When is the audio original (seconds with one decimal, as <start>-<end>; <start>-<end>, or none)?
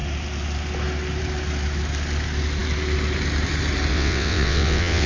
0.0-3.9